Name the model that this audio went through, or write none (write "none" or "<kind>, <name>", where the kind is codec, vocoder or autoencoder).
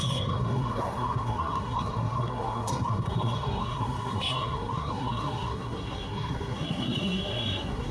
codec, SNAC